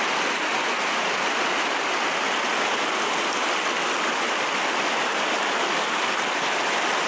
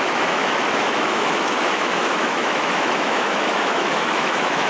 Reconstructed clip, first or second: second